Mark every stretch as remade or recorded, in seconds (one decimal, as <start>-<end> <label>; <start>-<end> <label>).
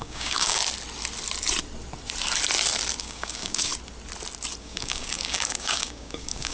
0.0-0.6 remade; 0.6-3.0 recorded; 3.0-3.7 remade; 3.7-4.6 recorded; 4.6-6.5 remade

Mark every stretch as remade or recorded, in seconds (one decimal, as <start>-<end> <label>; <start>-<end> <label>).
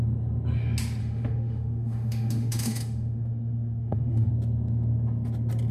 0.0-1.0 recorded; 1.0-4.3 remade; 4.3-5.7 recorded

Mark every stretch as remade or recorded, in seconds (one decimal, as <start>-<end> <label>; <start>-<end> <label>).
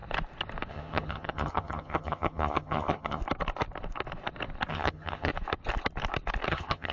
0.0-0.7 recorded; 0.7-3.2 remade; 3.2-4.7 recorded; 4.7-5.3 remade; 5.3-6.5 recorded; 6.5-6.9 remade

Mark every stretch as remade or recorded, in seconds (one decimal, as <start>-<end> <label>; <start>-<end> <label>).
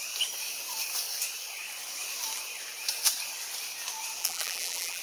0.0-4.2 recorded; 4.2-5.0 remade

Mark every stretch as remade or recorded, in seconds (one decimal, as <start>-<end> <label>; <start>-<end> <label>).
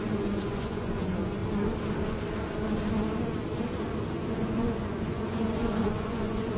0.0-1.4 remade; 1.4-4.1 recorded; 4.1-6.6 remade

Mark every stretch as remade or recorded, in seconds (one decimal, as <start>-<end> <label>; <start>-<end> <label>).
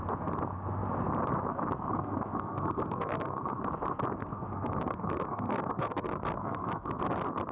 0.0-1.9 recorded; 1.9-3.6 remade; 3.6-4.2 recorded; 4.2-7.0 remade; 7.0-7.5 recorded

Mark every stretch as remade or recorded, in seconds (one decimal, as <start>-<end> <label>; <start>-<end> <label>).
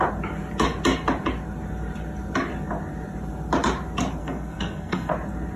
0.0-4.2 recorded; 4.2-5.1 remade; 5.1-5.6 recorded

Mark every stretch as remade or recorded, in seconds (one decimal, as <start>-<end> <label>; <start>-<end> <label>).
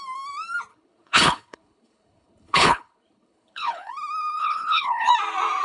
0.0-0.7 recorded; 0.7-3.9 remade; 3.9-4.4 recorded; 4.4-5.1 remade; 5.1-5.6 recorded